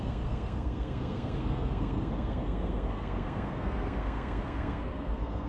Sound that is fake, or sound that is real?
fake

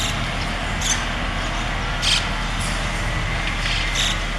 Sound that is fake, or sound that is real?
real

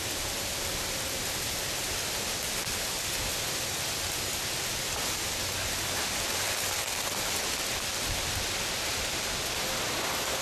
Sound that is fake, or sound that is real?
real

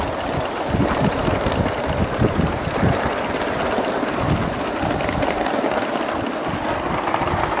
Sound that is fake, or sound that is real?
real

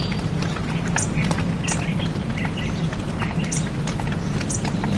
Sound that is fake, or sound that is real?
real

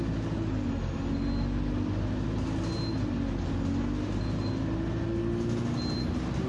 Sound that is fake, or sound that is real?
real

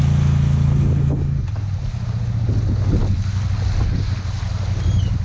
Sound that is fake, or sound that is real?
real